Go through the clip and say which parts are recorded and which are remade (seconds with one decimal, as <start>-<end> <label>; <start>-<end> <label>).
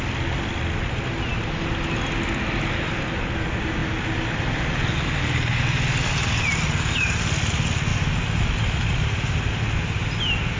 0.0-10.6 recorded